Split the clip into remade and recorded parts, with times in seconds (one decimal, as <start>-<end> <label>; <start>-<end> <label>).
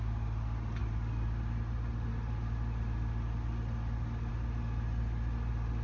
0.0-5.8 recorded